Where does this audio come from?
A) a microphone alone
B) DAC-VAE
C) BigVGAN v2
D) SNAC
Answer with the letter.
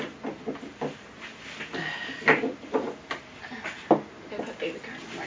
A